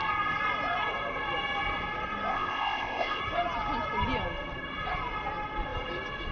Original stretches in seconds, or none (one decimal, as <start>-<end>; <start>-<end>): 0.0-2.3; 3.2-6.3